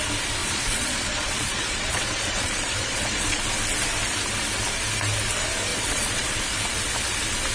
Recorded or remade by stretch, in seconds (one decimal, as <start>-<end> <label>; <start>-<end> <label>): 0.0-0.4 recorded; 0.4-3.4 remade; 3.4-5.7 recorded; 5.7-6.4 remade; 6.4-7.5 recorded